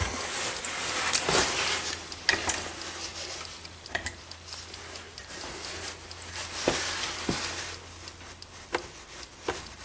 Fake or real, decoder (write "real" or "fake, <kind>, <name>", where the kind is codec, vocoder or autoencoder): real